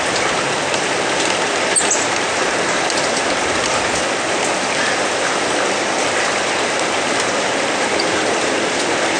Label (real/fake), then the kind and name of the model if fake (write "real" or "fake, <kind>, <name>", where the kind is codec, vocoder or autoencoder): real